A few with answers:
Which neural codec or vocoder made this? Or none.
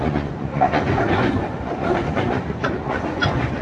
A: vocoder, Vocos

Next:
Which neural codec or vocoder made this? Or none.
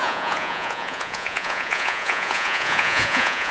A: vocoder, Vocos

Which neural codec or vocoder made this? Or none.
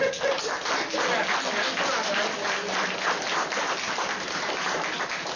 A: none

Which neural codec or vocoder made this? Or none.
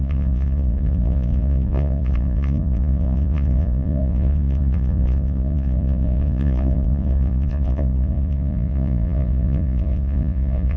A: vocoder, Vocos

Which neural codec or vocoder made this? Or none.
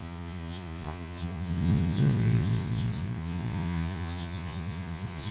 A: vocoder, Vocos